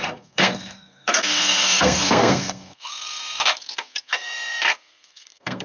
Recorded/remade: remade